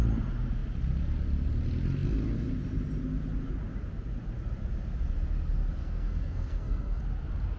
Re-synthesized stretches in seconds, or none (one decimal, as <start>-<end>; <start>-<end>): 5.8-7.0

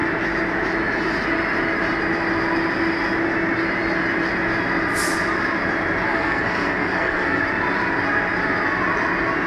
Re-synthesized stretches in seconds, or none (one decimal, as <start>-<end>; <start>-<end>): 6.1-7.4

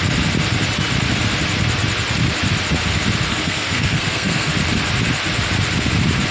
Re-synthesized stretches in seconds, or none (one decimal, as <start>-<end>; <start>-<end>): 3.3-4.5

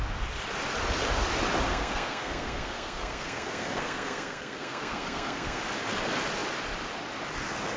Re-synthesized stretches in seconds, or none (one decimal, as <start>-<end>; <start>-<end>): 1.7-5.6

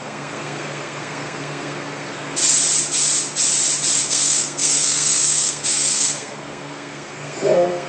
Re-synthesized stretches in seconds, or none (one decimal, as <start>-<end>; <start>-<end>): 0.0-2.4; 4.0-7.9

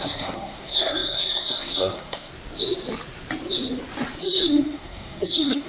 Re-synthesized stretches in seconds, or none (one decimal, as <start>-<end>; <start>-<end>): 0.0-2.3; 4.2-5.7